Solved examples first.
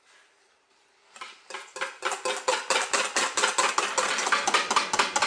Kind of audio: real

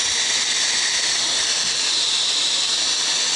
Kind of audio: real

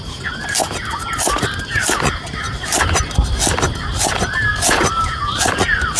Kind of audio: real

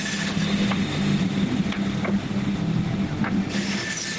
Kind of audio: real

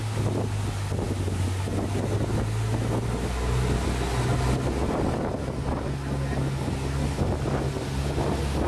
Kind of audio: real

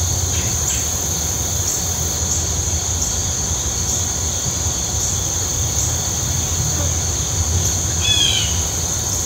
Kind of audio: real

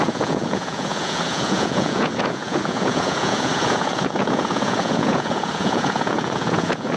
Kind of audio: fake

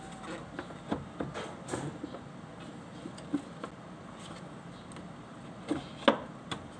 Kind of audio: real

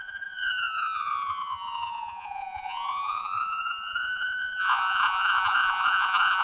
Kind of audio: fake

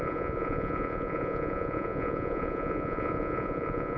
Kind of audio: fake